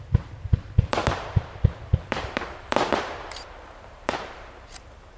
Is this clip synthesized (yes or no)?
yes